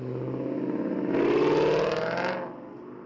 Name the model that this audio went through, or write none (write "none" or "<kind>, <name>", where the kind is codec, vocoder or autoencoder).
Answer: none